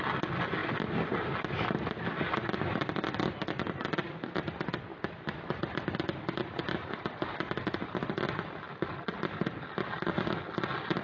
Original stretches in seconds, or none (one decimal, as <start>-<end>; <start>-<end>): 0.0-11.0